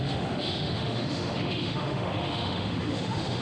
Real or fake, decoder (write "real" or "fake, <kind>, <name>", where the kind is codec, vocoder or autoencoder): fake, autoencoder, DAC-VAE